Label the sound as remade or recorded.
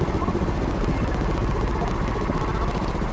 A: recorded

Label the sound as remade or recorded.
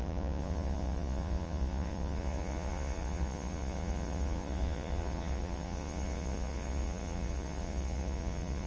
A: remade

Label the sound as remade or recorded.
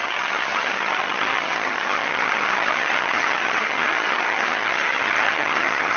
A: remade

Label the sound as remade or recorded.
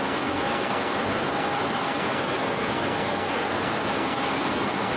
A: remade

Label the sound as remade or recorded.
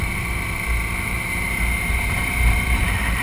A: remade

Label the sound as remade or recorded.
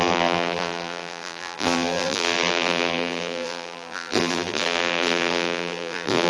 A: remade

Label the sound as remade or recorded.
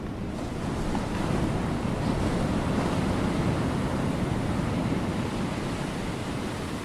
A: recorded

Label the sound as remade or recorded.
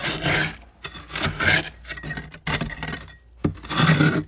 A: recorded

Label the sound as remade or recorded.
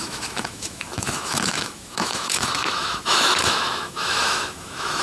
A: remade